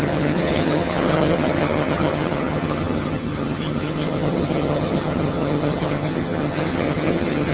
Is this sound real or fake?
fake